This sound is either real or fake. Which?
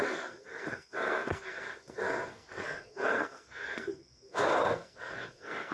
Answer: fake